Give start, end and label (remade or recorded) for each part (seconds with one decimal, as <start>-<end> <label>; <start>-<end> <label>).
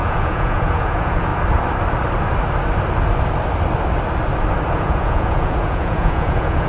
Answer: 0.0-1.3 remade; 1.3-4.7 recorded; 4.7-6.7 remade